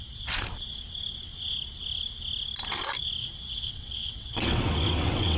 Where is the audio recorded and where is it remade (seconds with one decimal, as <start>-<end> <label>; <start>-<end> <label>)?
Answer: 0.0-3.2 recorded; 3.2-5.4 remade